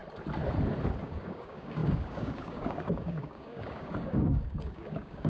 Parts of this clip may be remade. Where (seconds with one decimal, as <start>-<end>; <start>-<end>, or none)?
1.0-5.3